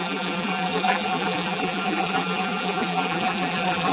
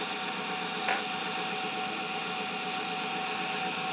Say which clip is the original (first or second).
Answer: second